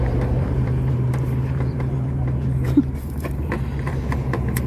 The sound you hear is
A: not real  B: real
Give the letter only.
A